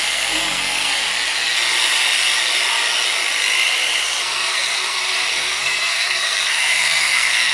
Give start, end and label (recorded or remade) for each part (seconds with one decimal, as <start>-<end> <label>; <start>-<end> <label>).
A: 0.0-1.0 remade; 1.0-4.2 recorded; 4.2-7.5 remade